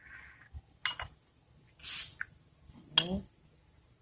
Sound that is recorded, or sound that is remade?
recorded